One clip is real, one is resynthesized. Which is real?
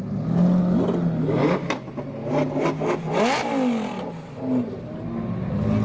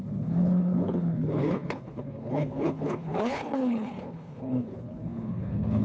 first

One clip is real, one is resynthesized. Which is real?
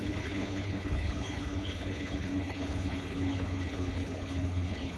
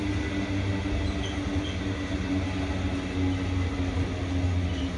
second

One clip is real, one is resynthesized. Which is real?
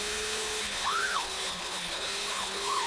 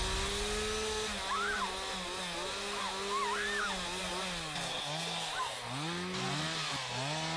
second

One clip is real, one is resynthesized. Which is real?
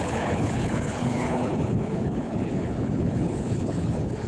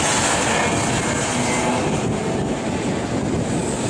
second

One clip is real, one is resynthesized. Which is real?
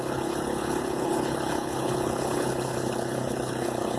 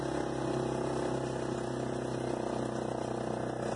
second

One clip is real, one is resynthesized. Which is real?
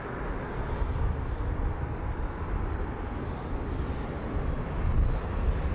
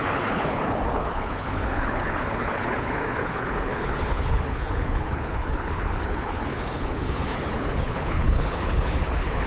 first